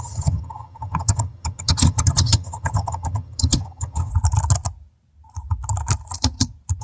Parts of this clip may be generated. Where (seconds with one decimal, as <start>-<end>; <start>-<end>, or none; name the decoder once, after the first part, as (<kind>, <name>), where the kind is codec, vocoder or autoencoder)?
0.0-4.1 (vocoder, HiFi-GAN)